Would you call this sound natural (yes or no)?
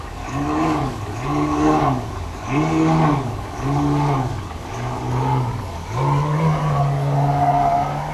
no